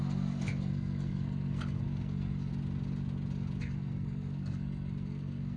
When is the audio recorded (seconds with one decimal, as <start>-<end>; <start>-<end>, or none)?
2.5-3.6